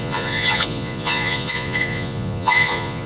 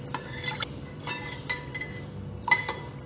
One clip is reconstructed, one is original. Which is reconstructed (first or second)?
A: first